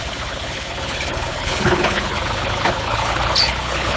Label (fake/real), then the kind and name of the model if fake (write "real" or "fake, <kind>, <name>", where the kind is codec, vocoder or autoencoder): fake, codec, HILCodec